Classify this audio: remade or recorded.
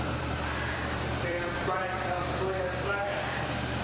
remade